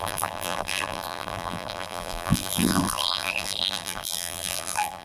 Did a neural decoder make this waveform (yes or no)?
yes